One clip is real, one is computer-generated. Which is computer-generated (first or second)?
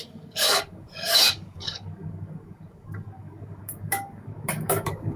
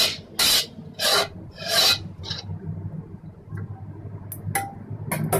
first